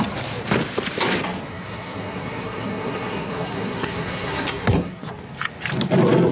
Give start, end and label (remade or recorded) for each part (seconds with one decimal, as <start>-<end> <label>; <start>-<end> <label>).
0.0-1.5 recorded; 1.5-5.1 remade; 5.1-6.3 recorded